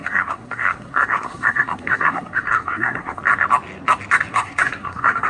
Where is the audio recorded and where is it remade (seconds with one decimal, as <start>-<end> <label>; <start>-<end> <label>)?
0.0-3.2 remade; 3.2-4.3 recorded; 4.3-5.3 remade